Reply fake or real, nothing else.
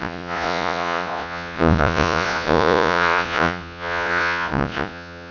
fake